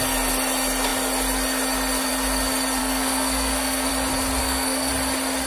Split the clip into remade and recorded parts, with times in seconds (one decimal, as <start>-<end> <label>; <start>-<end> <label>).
0.0-2.8 recorded; 2.8-3.9 remade; 3.9-4.4 recorded; 4.4-4.9 remade; 4.9-5.5 recorded